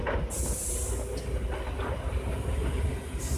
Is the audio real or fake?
real